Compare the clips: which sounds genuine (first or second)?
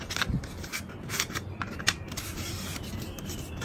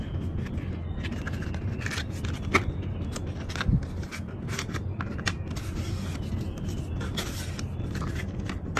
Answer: second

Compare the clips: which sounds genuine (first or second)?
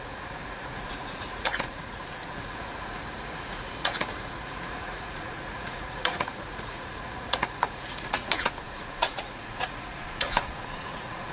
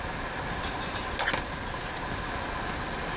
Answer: second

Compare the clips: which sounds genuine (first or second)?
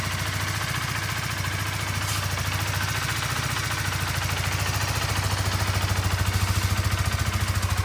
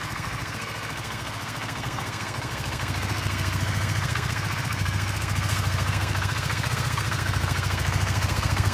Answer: first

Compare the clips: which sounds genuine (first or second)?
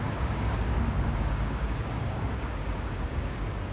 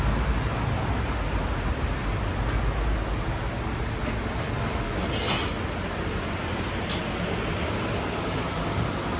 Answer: second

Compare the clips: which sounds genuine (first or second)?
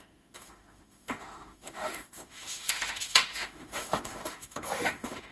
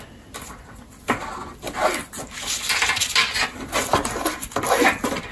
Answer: second